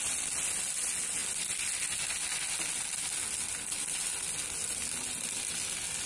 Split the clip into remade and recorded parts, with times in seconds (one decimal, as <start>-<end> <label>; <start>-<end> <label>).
0.0-6.1 recorded